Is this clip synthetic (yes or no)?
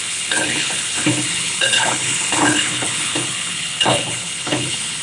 yes